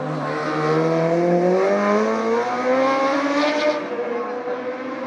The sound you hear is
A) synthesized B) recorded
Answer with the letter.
B